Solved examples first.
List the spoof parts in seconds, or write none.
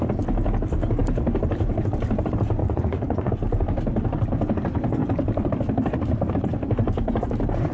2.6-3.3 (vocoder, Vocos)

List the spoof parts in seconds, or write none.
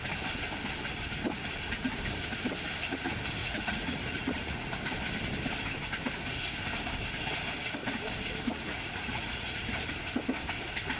3.4-4.7 (vocoder, Vocos); 8.5-9.6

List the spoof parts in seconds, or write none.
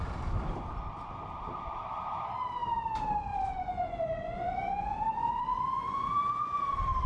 3.3-6.6 (vocoder, Vocos)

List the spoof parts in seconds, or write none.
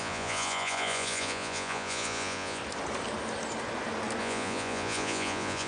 0.0-2.6 (vocoder, Vocos); 4.2-5.7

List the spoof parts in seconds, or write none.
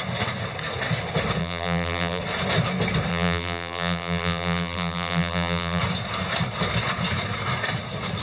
1.4-2.2 (vocoder, BigVGAN v2); 3.1-5.8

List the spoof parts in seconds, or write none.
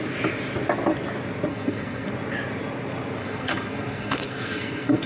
1.5-2.1 (codec, SNAC); 3.2-5.1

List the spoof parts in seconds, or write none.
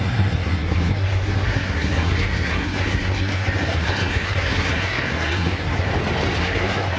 0.0-5.9 (codec, SNAC); 6.4-7.0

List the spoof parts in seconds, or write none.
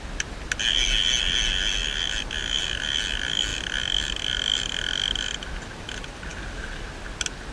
none